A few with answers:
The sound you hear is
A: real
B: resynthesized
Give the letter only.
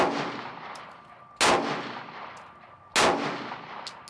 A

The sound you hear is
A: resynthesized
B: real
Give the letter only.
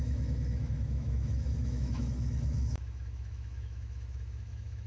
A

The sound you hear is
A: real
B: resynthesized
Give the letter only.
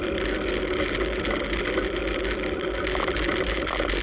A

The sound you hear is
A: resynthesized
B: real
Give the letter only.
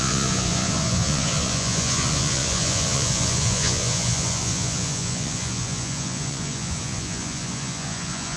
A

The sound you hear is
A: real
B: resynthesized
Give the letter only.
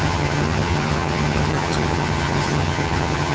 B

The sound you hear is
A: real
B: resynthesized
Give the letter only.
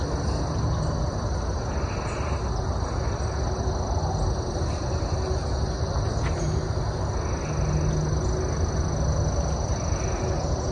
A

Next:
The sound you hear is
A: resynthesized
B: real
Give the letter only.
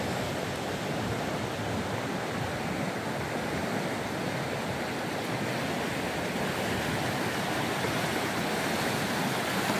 B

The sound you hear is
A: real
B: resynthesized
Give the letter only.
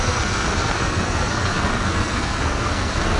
B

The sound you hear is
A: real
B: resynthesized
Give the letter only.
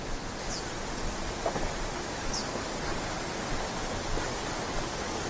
A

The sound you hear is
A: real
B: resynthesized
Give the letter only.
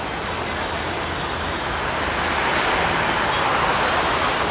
A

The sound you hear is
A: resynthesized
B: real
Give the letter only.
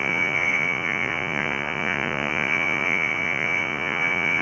A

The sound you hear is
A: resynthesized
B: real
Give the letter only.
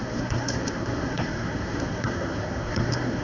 A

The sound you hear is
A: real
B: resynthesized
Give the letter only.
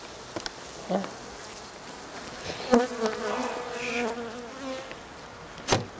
A